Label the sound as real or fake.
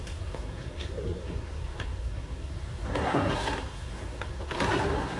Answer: fake